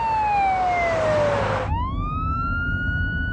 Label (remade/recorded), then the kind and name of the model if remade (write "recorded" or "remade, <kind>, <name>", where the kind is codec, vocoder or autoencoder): recorded